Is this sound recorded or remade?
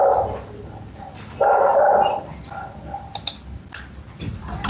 recorded